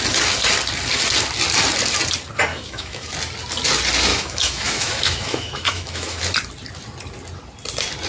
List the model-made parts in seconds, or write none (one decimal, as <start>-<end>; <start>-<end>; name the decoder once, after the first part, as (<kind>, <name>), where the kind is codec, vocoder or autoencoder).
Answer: 2.5-3.1 (autoencoder, DAC-VAE); 4.1-6.2